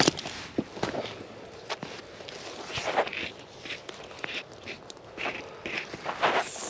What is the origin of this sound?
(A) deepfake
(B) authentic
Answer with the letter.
B